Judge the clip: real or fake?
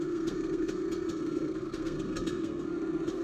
fake